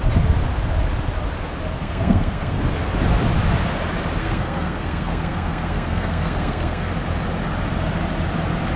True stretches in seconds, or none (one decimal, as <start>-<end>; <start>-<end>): 0.0-1.8; 2.6-4.2; 6.9-8.8